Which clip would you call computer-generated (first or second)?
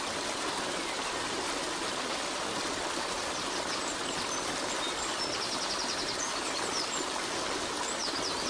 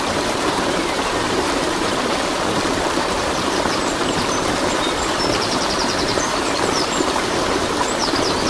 second